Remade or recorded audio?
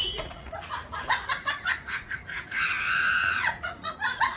remade